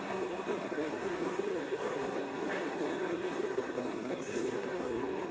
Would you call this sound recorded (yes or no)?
no